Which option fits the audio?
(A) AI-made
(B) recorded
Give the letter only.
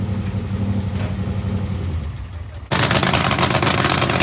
B